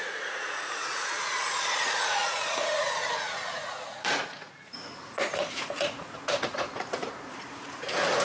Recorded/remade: remade